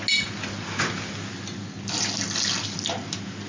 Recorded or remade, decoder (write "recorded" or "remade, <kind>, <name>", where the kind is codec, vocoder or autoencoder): recorded